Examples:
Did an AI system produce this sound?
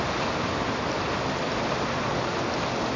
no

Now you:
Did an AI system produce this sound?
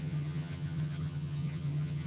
yes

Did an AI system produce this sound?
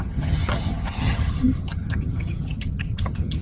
yes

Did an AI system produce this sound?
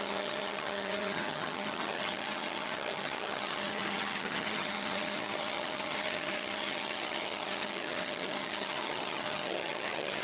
yes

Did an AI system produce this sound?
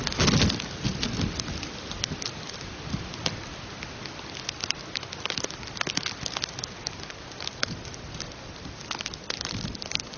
no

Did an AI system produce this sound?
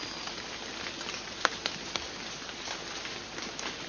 no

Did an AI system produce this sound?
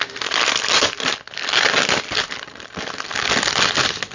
no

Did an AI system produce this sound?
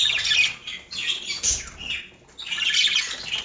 no